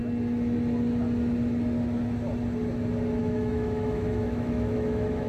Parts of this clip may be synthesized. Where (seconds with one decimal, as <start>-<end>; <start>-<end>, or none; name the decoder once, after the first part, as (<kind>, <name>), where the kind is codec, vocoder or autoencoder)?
3.2-5.3 (autoencoder, DAC-VAE)